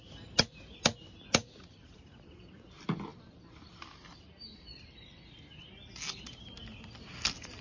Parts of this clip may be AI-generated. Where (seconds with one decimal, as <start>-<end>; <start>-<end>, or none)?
none